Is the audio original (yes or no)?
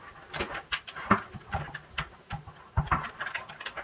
yes